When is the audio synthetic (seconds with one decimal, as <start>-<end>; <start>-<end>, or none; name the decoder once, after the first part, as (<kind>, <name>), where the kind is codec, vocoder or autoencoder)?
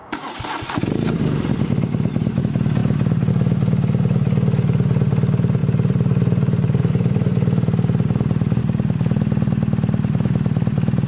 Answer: 0.0-2.4 (vocoder, BigVGAN v2); 2.8-3.3; 5.6-8.6